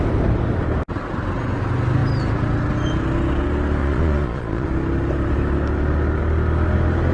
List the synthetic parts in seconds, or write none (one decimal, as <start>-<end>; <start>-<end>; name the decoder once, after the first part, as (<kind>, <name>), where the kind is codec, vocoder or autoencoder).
3.8-4.7 (vocoder, Vocos)